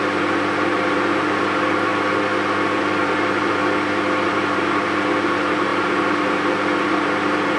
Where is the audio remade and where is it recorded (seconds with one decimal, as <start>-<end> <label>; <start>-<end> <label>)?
0.0-1.9 remade; 1.9-2.8 recorded; 2.8-3.6 remade; 3.6-4.3 recorded; 4.3-7.6 remade